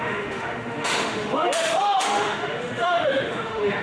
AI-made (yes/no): yes